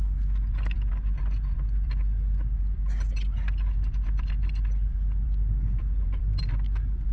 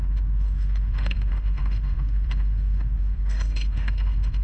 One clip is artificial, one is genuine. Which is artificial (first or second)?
second